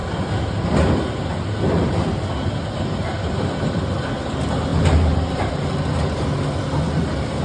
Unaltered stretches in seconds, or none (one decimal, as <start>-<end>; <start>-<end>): 0.0-4.7; 5.5-7.4